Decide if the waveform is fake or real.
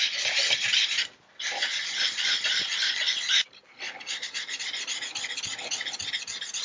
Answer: real